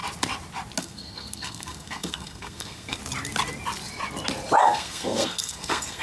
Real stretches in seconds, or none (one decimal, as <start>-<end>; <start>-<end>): 0.0-0.8; 3.0-4.6